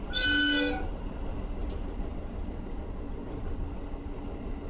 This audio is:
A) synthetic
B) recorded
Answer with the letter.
B